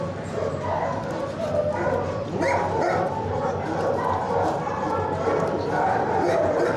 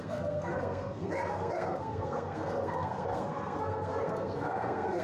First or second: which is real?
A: first